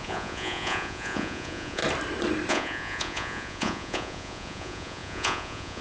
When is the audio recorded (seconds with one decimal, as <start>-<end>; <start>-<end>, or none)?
1.8-2.5

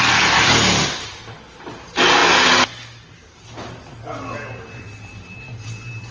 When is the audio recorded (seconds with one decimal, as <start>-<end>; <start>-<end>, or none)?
0.0-6.1

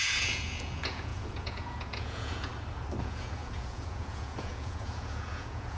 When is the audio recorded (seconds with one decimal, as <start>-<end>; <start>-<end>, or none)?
2.5-3.0

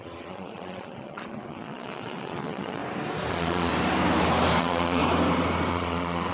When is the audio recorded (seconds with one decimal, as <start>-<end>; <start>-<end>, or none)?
2.8-3.3; 3.7-4.6; 5.0-5.7

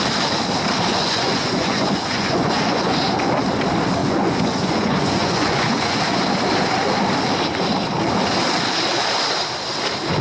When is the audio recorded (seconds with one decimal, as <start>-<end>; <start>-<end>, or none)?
0.0-0.9; 3.0-4.0; 6.0-10.2

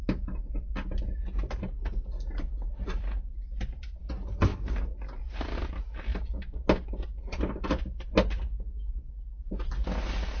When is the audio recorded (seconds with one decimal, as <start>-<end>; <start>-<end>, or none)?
0.0-10.4